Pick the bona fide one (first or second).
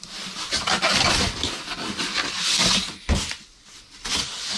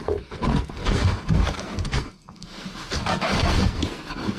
first